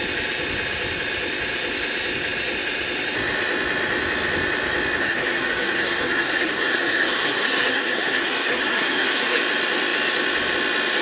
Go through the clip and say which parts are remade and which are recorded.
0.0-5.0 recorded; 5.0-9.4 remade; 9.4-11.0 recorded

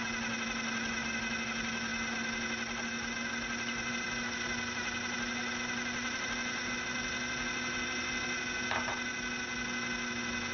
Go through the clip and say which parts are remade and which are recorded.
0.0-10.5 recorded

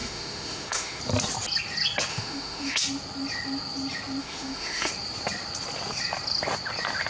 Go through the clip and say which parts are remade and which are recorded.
0.0-1.0 remade; 1.0-2.1 recorded; 2.1-2.8 remade; 2.8-4.2 recorded; 4.2-4.9 remade; 4.9-7.1 recorded

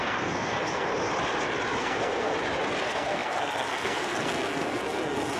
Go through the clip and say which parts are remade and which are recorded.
0.0-0.9 remade; 0.9-1.8 recorded; 1.8-2.3 remade; 2.3-2.8 recorded; 2.8-5.4 remade